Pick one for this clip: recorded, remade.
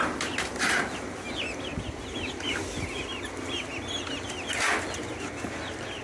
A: recorded